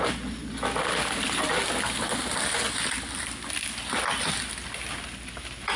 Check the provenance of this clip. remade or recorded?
recorded